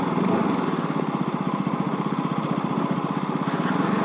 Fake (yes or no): no